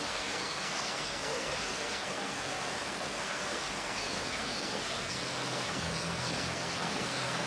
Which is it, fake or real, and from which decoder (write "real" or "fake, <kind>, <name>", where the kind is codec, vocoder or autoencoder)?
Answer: fake, codec, SNAC